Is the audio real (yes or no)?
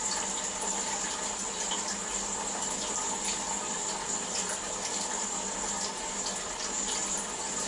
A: yes